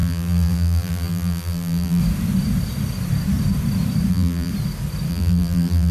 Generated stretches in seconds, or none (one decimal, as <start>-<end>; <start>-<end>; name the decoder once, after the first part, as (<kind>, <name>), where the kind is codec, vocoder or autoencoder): 0.0-2.0 (vocoder, BigVGAN v2); 4.1-4.5; 5.1-5.9